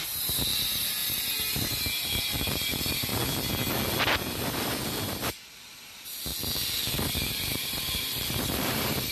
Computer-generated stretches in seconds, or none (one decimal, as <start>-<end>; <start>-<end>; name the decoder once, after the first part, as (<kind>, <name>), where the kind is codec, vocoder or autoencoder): 0.0-1.0 (vocoder, BigVGAN v2); 1.5-3.1; 4.0-6.3; 7.1-9.1